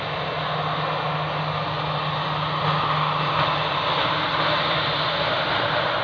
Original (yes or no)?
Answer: yes